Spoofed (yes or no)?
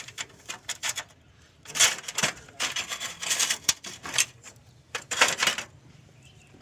yes